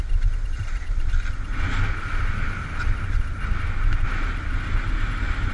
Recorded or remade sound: recorded